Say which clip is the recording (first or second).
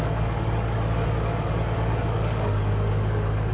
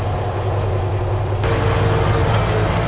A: second